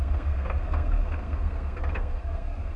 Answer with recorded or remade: remade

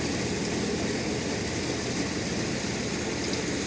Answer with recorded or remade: recorded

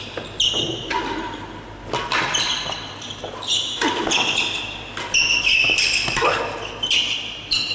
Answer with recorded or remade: recorded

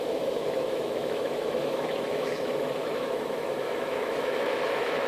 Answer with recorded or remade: remade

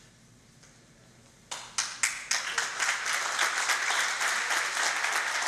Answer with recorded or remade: recorded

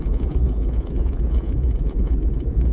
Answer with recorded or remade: remade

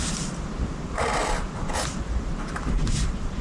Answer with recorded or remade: remade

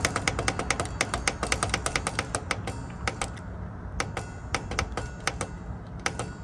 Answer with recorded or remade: recorded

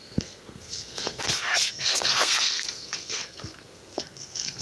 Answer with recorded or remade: remade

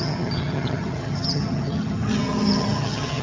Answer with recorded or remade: remade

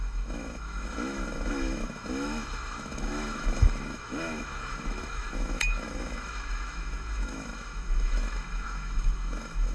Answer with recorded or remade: remade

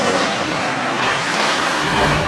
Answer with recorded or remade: remade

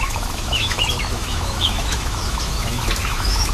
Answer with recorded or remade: remade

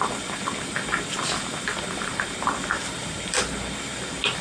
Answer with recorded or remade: recorded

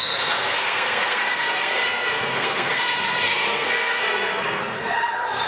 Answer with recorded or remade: remade